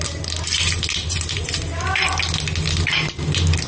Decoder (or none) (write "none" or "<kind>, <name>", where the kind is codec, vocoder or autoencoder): none